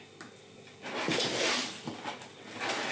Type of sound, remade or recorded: recorded